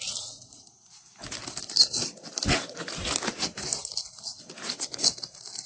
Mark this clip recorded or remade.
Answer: recorded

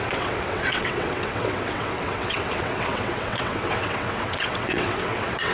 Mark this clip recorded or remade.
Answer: remade